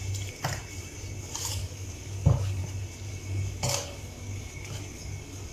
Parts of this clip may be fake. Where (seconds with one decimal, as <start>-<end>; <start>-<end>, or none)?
1.5-2.6; 3.1-5.5